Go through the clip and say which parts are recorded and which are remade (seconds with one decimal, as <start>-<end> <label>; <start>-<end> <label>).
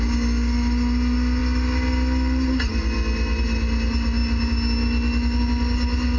0.0-6.2 recorded